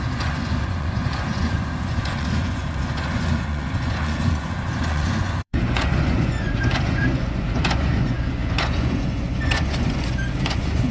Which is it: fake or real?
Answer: fake